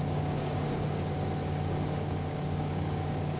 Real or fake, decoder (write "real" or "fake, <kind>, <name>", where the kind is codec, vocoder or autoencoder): fake, codec, DAC